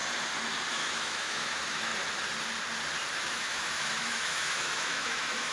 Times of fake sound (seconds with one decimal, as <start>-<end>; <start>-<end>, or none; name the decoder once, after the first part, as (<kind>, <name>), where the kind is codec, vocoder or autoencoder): 0.7-1.9 (autoencoder, DAC-VAE); 3.2-5.5